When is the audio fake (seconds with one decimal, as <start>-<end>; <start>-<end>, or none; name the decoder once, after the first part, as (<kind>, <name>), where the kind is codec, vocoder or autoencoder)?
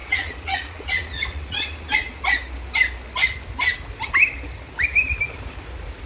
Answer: 0.0-2.2 (vocoder, Vocos)